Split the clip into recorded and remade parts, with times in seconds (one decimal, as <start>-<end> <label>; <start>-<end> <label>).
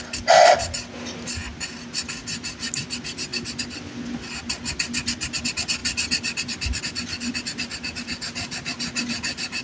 0.0-9.6 recorded